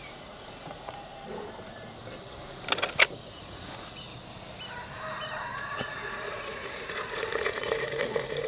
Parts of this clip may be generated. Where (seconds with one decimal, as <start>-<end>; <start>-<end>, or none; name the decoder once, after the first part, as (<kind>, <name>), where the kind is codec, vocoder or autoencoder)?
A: 0.0-1.1 (vocoder, Vocos); 3.3-4.1; 5.7-8.5